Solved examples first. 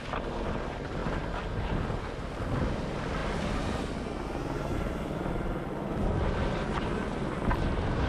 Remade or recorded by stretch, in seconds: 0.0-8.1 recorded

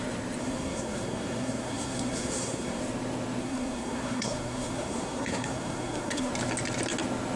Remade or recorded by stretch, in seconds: 0.0-0.4 recorded; 0.4-2.8 remade; 2.8-3.4 recorded; 3.4-6.3 remade; 6.3-7.4 recorded